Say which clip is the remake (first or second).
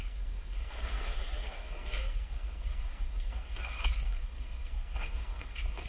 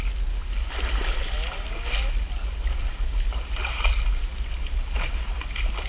first